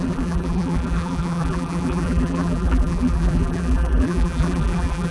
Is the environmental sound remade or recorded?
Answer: remade